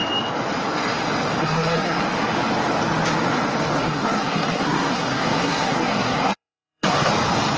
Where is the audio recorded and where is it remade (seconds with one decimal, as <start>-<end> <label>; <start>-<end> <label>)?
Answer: 0.0-1.4 recorded; 1.4-2.0 remade; 2.0-3.8 recorded; 3.8-7.1 remade; 7.1-7.6 recorded